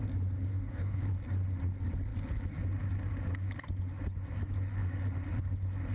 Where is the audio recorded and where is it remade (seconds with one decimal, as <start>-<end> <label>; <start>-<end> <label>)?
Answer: 0.0-0.5 recorded; 0.5-1.0 remade; 1.0-5.9 recorded